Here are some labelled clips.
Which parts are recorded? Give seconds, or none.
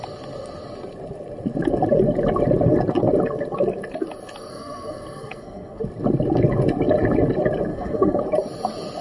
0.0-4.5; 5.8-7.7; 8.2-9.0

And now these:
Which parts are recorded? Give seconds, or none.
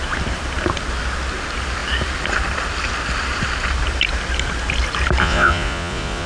0.0-5.2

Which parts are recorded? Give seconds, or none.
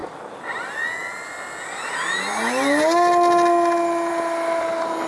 0.0-5.1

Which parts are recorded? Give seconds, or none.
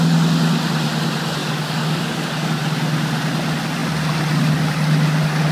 0.0-1.4; 2.5-5.5